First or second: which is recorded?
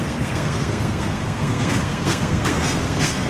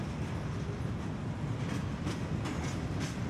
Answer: second